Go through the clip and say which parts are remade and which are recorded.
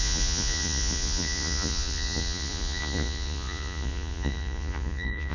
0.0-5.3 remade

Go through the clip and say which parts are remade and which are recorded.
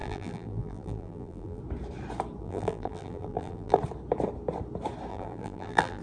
0.0-1.6 remade; 1.6-2.4 recorded; 2.4-3.8 remade; 3.8-5.1 recorded; 5.1-6.0 remade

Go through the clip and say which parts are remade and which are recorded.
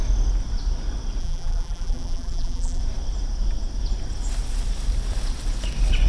0.0-1.2 recorded; 1.2-2.8 remade; 2.8-6.1 recorded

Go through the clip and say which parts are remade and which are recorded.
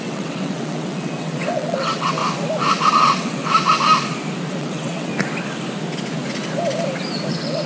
0.0-2.2 remade; 2.2-2.9 recorded; 2.9-3.4 remade; 3.4-4.5 recorded; 4.5-5.1 remade; 5.1-7.3 recorded; 7.3-7.7 remade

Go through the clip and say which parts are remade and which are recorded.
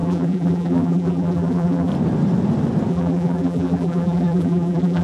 0.0-1.9 remade; 1.9-2.9 recorded; 2.9-5.0 remade